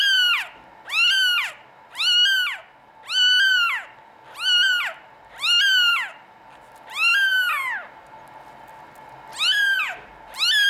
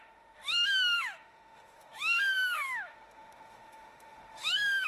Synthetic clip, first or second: second